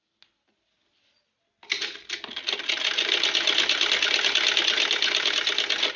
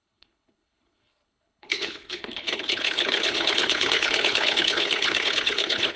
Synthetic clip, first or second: second